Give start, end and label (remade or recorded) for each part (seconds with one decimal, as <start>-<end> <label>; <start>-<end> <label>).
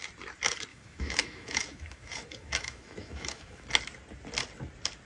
0.0-0.7 recorded; 0.7-3.7 remade; 3.7-5.1 recorded